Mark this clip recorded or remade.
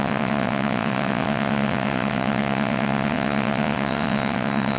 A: remade